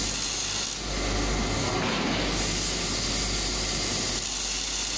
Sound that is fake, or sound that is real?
real